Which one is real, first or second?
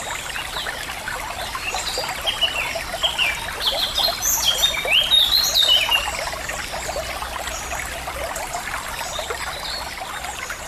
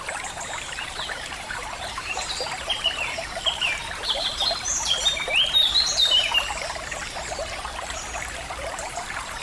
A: first